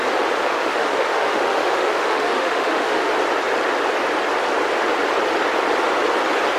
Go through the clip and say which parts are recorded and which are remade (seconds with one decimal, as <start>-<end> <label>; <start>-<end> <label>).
0.0-0.5 recorded; 0.5-3.1 remade; 3.1-6.6 recorded